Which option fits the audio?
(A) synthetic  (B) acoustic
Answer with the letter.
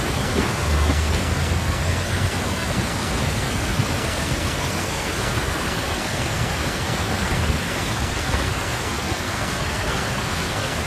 A